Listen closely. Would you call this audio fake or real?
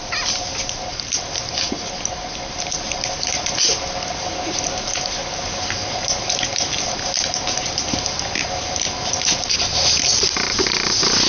real